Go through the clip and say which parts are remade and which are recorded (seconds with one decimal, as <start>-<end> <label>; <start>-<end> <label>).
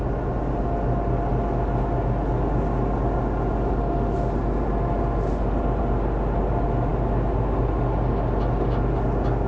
0.0-9.5 recorded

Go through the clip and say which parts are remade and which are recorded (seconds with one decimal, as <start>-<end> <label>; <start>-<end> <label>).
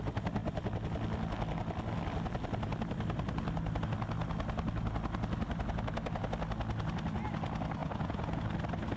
0.0-7.8 recorded; 7.8-8.4 remade; 8.4-9.0 recorded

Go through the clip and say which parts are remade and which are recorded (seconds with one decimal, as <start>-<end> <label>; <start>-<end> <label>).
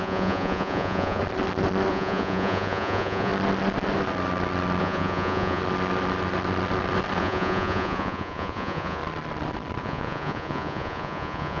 0.0-1.2 remade; 1.2-1.9 recorded; 1.9-3.3 remade; 3.3-4.8 recorded; 4.8-5.6 remade; 5.6-7.2 recorded; 7.2-9.0 remade; 9.0-9.8 recorded; 9.8-11.6 remade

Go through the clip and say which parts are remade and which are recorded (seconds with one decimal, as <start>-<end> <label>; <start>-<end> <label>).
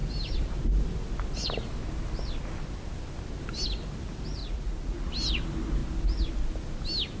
0.0-4.4 recorded; 4.4-5.1 remade; 5.1-7.2 recorded